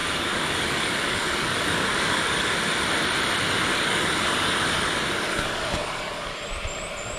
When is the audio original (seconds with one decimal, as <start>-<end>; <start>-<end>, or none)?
2.5-3.7; 6.3-7.2